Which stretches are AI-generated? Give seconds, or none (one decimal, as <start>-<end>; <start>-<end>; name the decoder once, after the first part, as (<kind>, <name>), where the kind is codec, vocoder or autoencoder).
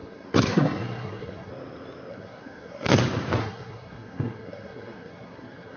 0.0-1.5 (codec, SNAC); 2.1-3.0; 3.4-5.8